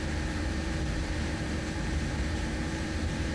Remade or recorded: remade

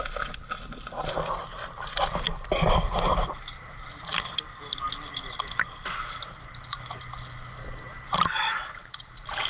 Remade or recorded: recorded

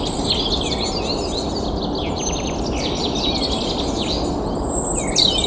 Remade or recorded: recorded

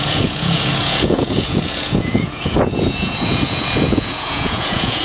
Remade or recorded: remade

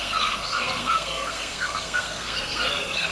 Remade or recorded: remade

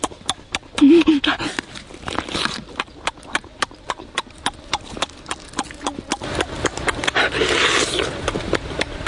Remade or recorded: recorded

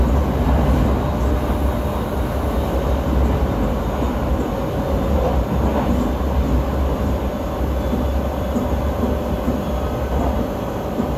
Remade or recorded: recorded